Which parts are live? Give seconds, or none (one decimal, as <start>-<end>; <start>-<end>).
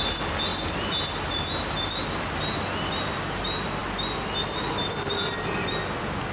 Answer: 0.0-6.3